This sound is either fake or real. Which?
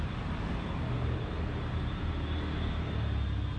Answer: real